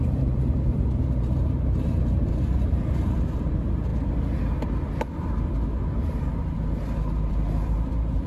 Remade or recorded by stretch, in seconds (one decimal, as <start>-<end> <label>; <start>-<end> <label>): 0.0-3.9 remade; 3.9-7.3 recorded; 7.3-8.3 remade